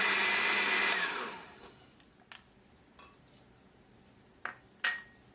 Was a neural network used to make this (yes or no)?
no